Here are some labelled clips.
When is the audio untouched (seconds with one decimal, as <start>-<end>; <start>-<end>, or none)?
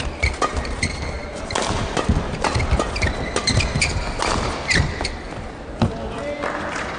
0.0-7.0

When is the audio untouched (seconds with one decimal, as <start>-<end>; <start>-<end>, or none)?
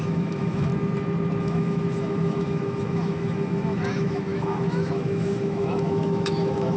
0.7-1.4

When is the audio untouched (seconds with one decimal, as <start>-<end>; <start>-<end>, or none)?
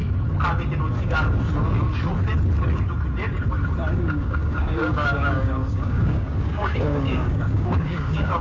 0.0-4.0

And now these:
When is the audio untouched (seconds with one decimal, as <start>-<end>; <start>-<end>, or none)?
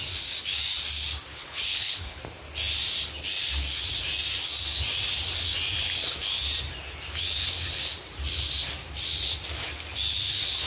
0.0-1.3; 2.2-10.7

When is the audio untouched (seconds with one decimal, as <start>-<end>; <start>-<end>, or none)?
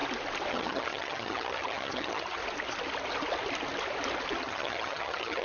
0.0-0.5; 2.4-4.4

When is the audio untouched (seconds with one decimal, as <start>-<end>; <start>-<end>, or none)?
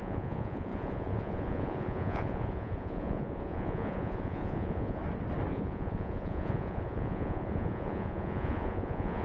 5.0-5.5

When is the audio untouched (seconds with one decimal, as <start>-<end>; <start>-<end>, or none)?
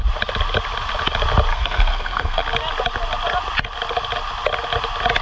0.0-1.5; 2.4-5.2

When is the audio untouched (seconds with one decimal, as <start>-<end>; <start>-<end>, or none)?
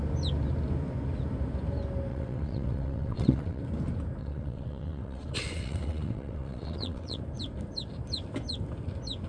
0.0-2.1; 3.6-4.2; 7.2-9.3